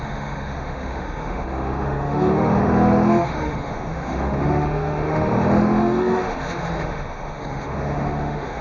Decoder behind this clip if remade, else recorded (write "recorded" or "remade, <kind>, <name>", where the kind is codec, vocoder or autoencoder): remade, autoencoder, DAC-VAE